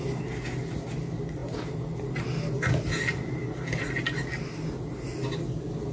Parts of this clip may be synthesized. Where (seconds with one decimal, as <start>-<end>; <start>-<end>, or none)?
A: none